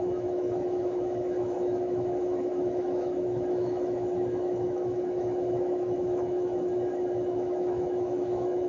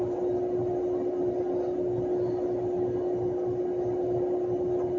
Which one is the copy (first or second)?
first